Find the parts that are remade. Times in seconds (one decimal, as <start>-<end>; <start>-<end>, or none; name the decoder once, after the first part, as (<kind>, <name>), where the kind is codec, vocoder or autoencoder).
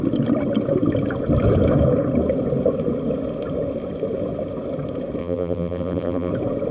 5.2-6.3 (vocoder, BigVGAN v2)